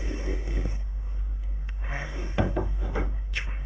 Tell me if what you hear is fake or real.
fake